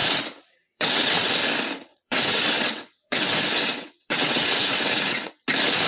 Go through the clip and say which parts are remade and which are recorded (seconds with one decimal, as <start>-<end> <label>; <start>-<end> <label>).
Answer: 0.0-1.3 remade; 1.3-1.9 recorded; 1.9-5.3 remade; 5.3-5.9 recorded